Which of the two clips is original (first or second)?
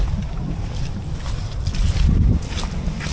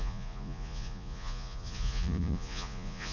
first